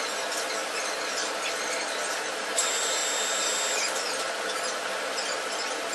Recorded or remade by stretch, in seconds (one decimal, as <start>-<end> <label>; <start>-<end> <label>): 0.0-5.9 recorded